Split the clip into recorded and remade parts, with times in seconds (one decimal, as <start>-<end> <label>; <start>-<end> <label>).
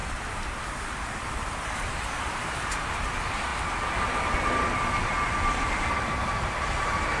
0.0-3.5 remade; 3.5-5.6 recorded; 5.6-7.2 remade